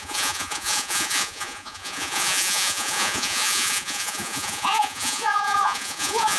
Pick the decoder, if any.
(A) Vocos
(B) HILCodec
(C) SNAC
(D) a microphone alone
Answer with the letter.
A